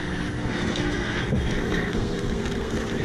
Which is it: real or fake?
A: fake